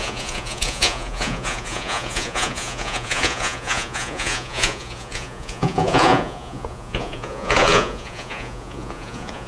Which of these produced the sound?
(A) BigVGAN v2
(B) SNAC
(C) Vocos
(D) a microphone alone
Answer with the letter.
C